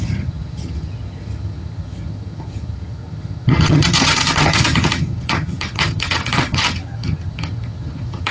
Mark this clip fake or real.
fake